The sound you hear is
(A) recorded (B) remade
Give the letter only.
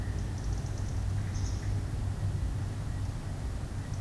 A